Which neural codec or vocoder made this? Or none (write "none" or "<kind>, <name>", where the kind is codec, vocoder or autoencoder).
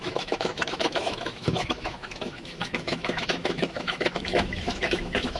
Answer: autoencoder, DAC-VAE